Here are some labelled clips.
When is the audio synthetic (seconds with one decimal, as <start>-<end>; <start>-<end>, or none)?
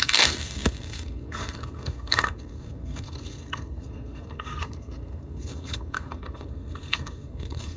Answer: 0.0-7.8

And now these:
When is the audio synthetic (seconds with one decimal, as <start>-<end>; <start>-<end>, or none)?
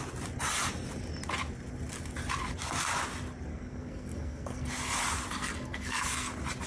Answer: 3.5-4.7; 5.3-6.3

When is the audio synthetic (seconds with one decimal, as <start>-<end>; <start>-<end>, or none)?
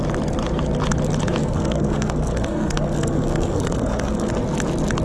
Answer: 1.4-4.3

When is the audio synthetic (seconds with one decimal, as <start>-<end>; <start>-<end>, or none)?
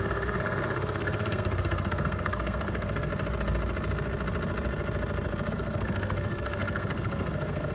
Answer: 0.0-3.1; 5.5-7.7